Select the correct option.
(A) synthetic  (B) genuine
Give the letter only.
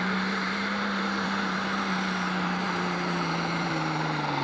A